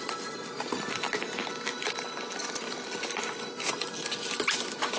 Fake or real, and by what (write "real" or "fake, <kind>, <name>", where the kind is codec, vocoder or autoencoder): real